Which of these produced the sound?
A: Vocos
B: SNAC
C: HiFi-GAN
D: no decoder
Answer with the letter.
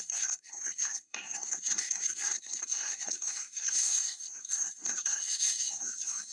B